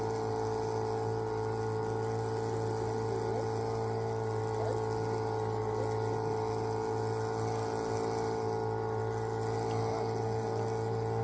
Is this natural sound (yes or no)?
yes